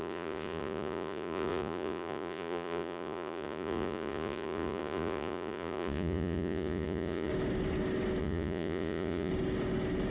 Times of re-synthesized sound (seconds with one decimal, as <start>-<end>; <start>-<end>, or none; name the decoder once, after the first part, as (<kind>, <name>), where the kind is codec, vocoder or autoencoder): 0.0-7.3 (vocoder, Vocos); 8.2-9.3

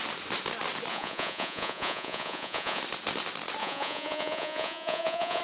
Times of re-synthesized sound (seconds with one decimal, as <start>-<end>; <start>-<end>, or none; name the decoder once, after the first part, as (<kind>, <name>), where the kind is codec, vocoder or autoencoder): 0.9-2.8 (vocoder, Vocos); 3.6-5.4

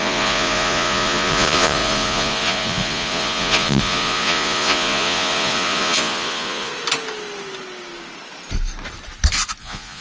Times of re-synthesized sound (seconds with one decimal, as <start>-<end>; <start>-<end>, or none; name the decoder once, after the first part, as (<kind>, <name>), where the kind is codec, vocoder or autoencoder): 0.0-6.7 (vocoder, Vocos); 9.6-10.0

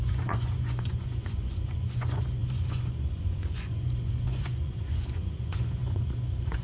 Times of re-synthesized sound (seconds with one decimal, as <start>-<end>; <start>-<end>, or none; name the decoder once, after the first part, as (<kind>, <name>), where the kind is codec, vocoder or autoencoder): 0.0-6.6 (vocoder, Vocos)

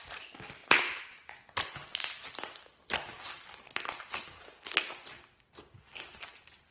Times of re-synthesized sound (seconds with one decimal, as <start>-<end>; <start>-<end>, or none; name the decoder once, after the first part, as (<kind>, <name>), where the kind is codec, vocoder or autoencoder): none

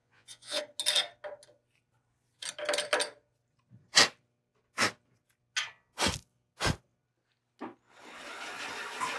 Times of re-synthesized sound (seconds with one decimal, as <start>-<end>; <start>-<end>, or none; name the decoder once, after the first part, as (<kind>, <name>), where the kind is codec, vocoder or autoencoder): 0.0-0.6 (vocoder, Vocos)

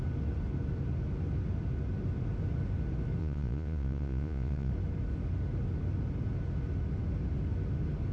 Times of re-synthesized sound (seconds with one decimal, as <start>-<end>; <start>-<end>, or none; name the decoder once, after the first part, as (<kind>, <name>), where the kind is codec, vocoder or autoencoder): 3.2-4.7 (vocoder, Vocos)